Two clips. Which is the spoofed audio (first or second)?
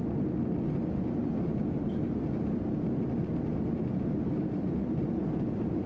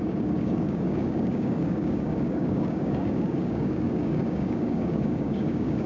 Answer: second